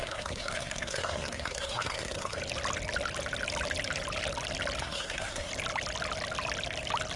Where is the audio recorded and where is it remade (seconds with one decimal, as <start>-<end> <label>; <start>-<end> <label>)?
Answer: 0.0-2.4 remade; 2.4-4.8 recorded; 4.8-5.5 remade; 5.5-7.2 recorded